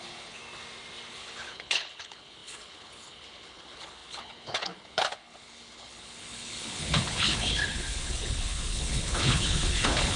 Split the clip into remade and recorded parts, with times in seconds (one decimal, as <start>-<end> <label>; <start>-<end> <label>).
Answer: 0.0-0.4 remade; 0.4-1.1 recorded; 1.1-10.2 remade